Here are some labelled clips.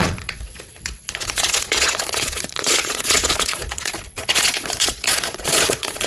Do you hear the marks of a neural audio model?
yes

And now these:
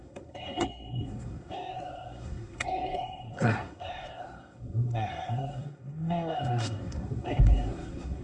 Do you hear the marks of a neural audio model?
yes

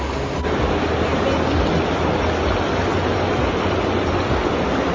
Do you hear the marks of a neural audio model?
no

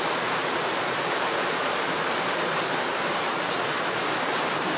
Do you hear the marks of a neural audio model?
yes